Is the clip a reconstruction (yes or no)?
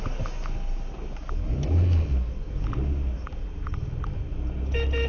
no